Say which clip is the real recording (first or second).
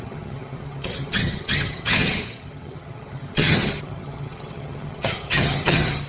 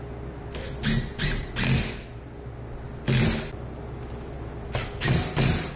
second